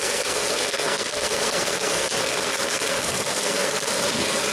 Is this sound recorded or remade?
remade